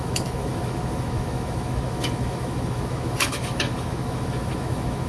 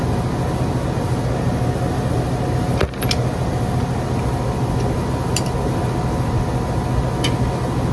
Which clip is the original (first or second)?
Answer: second